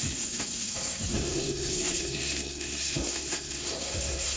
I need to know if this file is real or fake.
fake